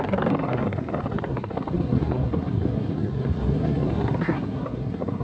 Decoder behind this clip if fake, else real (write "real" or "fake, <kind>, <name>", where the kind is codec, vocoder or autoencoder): fake, codec, SNAC